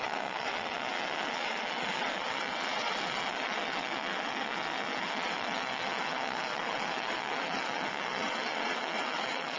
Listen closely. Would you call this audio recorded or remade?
remade